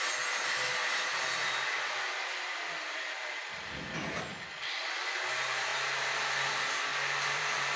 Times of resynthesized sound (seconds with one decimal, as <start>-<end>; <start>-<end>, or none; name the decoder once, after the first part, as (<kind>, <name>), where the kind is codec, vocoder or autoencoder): 0.8-2.4 (vocoder, BigVGAN v2); 4.3-5.3; 5.7-6.5; 6.9-7.8